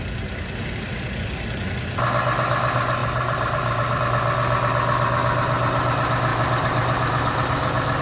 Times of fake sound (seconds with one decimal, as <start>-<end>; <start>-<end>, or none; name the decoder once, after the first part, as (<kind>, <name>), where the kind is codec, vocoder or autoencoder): 3.0-4.0 (vocoder, BigVGAN v2); 6.3-8.0